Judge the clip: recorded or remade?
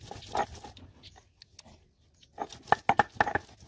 recorded